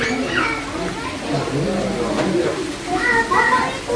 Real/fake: real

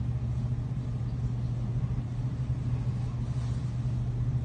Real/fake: real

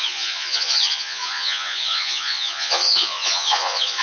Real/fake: fake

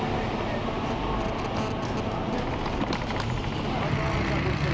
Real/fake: real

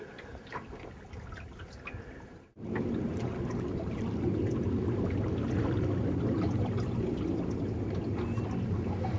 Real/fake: real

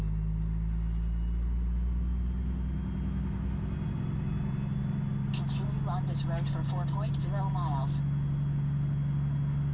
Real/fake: real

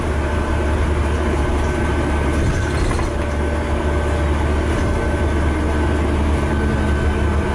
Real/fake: real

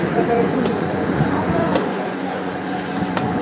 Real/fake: fake